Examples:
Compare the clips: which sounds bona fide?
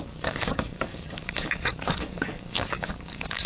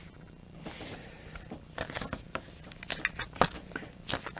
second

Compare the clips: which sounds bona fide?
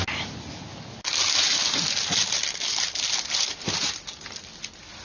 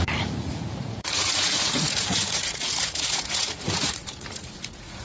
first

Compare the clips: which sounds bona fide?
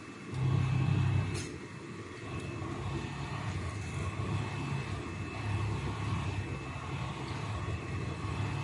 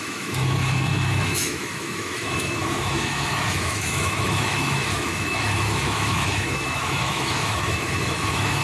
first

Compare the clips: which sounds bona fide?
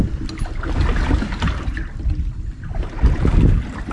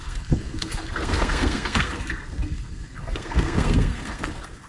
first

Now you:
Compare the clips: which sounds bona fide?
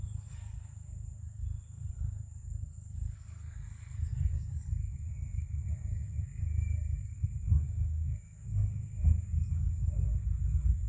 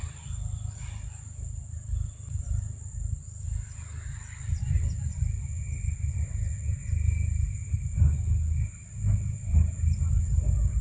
second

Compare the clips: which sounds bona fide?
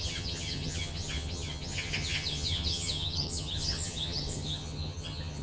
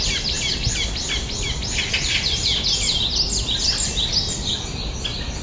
second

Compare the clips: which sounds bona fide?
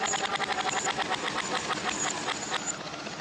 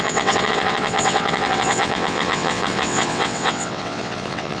first